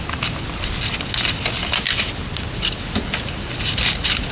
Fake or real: real